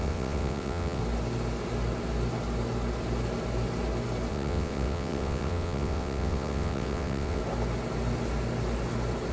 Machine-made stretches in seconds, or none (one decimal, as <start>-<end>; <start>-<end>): 0.0-1.0; 4.3-7.4